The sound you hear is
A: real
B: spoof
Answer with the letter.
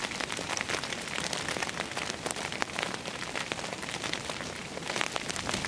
A